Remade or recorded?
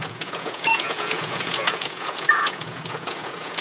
remade